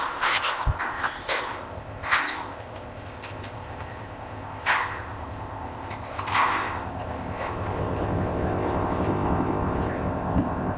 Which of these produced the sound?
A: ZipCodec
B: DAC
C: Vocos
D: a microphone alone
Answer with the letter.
A